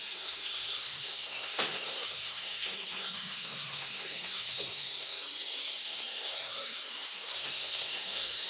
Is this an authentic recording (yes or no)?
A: no